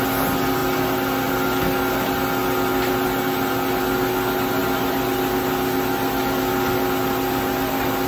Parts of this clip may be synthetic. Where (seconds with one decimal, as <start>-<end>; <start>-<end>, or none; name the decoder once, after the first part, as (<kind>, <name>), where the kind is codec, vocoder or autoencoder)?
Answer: none